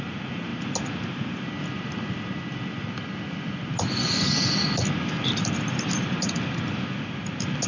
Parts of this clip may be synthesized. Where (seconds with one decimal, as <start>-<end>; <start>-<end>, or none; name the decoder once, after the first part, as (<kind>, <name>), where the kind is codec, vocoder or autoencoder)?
none